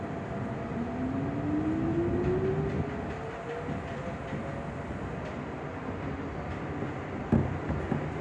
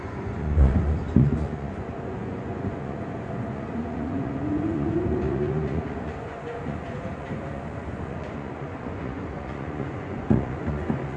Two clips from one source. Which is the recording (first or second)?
first